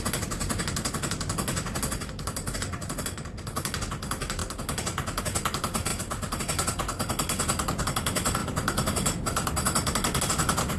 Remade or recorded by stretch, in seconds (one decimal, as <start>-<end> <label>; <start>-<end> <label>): 0.0-10.8 recorded